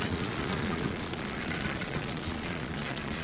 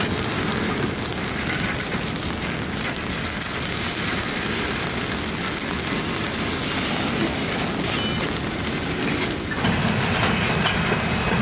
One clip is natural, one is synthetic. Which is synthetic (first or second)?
first